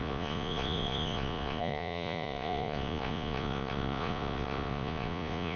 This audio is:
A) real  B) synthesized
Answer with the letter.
B